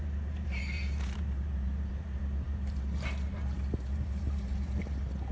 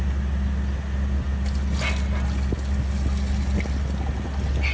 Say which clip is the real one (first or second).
second